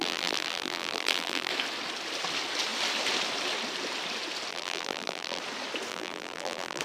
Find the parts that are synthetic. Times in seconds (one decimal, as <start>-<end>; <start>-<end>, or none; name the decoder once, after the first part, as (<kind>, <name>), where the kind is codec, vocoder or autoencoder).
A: 0.0-1.5 (vocoder, BigVGAN v2); 4.5-5.4; 5.9-6.8